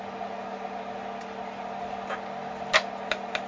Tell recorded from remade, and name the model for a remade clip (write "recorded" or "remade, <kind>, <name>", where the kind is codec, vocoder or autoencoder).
recorded